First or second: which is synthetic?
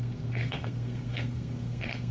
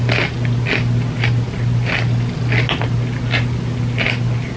first